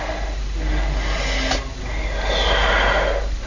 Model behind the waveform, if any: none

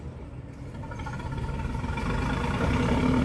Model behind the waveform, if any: none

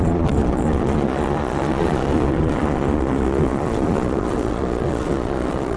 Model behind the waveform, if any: vocoder, Vocos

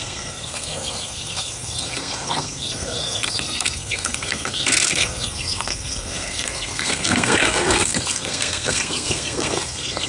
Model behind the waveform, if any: codec, SNAC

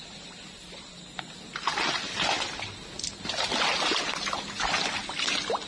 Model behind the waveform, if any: none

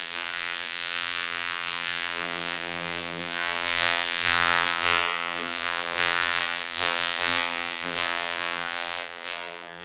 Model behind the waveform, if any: vocoder, BigVGAN v2